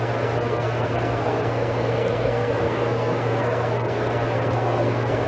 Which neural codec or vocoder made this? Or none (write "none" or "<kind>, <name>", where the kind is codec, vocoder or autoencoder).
codec, SNAC